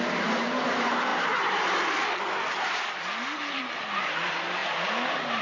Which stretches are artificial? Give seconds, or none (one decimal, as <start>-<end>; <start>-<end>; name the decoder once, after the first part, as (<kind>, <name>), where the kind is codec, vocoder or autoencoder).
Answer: none